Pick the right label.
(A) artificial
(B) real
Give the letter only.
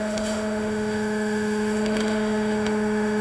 A